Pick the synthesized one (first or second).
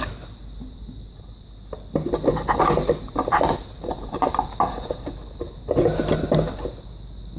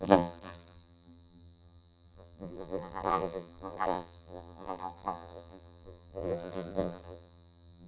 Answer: second